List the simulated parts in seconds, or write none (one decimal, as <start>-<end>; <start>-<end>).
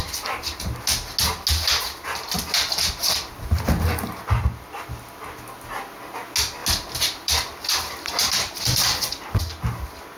6.6-9.4